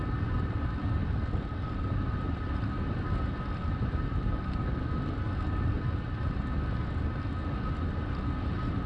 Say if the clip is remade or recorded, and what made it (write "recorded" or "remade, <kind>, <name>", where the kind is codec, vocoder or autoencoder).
recorded